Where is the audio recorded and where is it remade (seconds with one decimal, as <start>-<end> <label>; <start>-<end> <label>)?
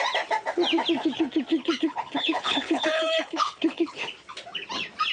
0.0-1.5 recorded; 1.5-4.0 remade; 4.0-5.1 recorded